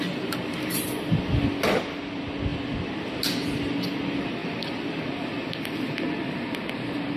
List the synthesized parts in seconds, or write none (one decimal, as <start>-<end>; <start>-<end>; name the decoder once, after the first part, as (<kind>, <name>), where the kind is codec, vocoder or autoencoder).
none

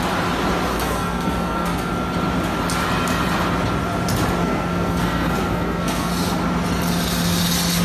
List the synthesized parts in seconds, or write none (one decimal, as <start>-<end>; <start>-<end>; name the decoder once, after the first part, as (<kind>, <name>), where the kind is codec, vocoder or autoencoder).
0.7-1.9 (codec, SNAC); 4.4-6.1

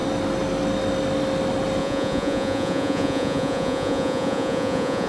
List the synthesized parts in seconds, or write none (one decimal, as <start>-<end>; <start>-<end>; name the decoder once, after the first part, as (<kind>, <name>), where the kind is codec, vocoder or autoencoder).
1.8-5.1 (vocoder, Vocos)

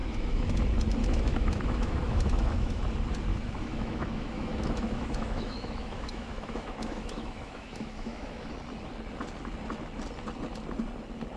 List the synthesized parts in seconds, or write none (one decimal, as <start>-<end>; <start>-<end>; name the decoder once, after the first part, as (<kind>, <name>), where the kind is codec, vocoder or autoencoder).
0.0-0.6 (autoencoder, DAC-VAE); 1.0-2.8; 3.3-8.5

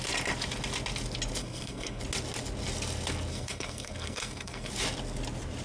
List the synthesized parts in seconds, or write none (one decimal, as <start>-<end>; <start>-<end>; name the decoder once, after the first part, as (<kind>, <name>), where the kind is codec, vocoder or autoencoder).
1.4-2.0 (codec, SNAC); 3.3-4.7

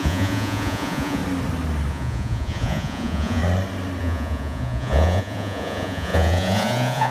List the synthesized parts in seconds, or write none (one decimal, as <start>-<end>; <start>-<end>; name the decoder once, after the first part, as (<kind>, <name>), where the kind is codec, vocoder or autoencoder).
0.0-1.2 (vocoder, Vocos); 1.9-3.4; 4.0-7.1